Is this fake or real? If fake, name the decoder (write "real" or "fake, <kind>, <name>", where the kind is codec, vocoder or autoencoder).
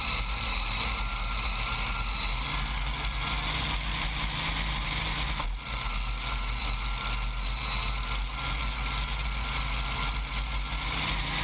real